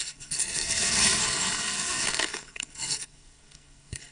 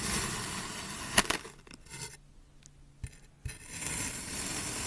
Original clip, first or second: second